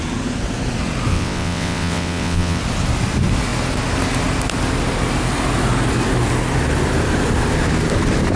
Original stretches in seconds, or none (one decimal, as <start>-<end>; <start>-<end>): 0.0-1.1; 2.6-8.4